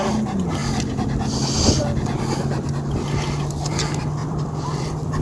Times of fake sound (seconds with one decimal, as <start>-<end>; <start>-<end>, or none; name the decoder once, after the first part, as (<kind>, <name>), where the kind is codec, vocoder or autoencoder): 4.2-4.8 (vocoder, BigVGAN v2)